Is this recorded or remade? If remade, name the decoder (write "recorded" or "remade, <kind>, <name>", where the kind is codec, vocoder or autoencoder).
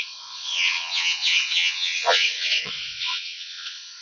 remade, vocoder, WaveNeXt